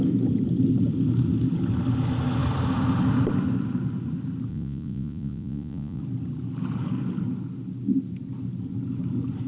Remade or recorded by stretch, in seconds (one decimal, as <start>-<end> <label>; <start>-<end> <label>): 0.0-4.5 recorded; 4.5-6.0 remade; 6.0-9.5 recorded